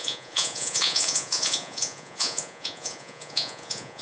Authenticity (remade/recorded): remade